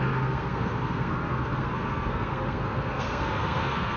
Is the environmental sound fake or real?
fake